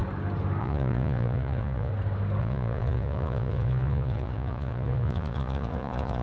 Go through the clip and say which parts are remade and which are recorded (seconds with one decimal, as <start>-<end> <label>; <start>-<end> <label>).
0.0-0.6 recorded; 0.6-1.9 remade; 1.9-2.4 recorded; 2.4-6.2 remade